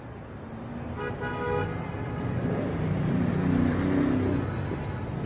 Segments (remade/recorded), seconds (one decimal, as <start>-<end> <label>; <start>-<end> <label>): 0.0-1.6 recorded; 1.6-3.3 remade; 3.3-5.3 recorded